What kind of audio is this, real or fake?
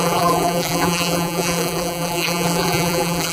fake